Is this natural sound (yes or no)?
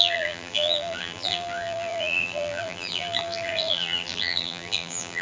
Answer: no